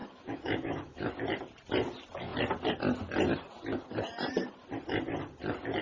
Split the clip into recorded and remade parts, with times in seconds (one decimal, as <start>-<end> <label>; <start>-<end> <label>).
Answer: 0.0-1.1 remade; 1.1-5.8 recorded